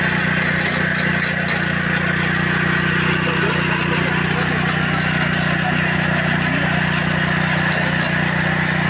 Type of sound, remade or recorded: recorded